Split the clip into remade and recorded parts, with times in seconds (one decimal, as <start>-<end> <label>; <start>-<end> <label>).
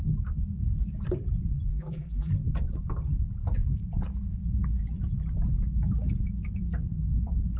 0.0-1.7 recorded; 1.7-2.3 remade; 2.3-7.6 recorded